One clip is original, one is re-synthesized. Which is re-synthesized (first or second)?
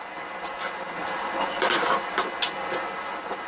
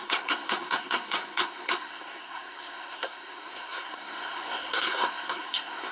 second